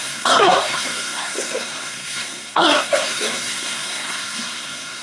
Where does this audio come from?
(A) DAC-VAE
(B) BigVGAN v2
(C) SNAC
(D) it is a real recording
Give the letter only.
C